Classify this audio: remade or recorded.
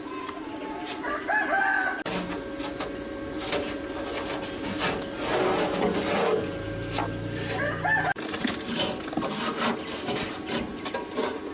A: recorded